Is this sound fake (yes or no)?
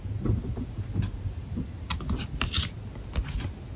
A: no